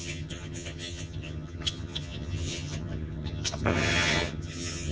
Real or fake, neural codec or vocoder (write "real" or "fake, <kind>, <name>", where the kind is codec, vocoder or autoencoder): fake, vocoder, HiFi-GAN